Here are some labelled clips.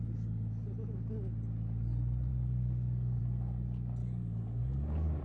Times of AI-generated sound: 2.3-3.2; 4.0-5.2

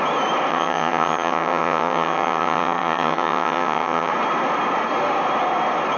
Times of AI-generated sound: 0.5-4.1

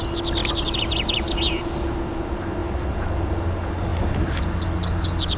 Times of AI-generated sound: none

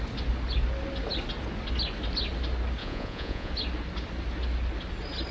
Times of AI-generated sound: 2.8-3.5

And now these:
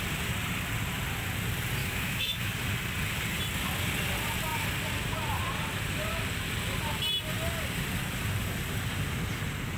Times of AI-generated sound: 1.8-2.5

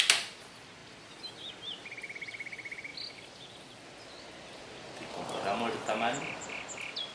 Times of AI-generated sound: none